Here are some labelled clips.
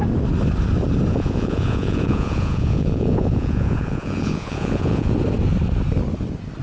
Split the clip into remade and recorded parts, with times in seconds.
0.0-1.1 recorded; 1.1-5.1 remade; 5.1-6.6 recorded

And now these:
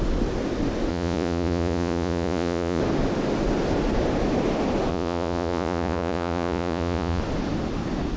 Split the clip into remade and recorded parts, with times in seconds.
0.0-0.9 recorded; 0.9-2.8 remade; 2.8-4.9 recorded; 4.9-7.2 remade; 7.2-8.2 recorded

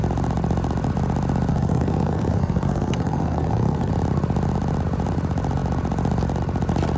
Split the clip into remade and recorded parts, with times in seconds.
0.0-1.5 recorded; 1.5-3.9 remade; 3.9-7.0 recorded

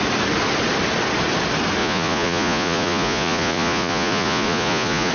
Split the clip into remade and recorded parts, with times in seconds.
0.0-1.8 recorded; 1.8-5.1 remade

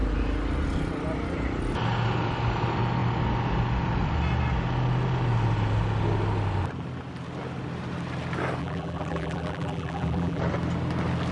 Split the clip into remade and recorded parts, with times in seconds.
0.0-8.6 recorded; 8.6-10.4 remade; 10.4-11.3 recorded